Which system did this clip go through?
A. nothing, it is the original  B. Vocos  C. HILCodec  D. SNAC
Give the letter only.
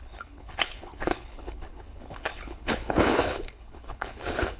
C